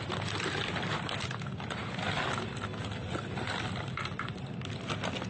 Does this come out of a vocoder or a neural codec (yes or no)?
no